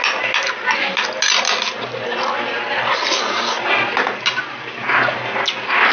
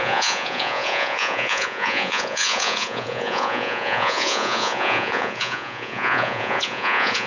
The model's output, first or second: second